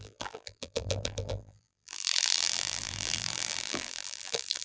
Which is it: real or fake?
fake